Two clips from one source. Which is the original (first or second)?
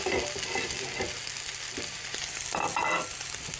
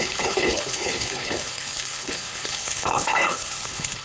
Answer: first